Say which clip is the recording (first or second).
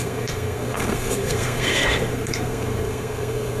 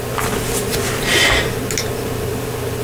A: second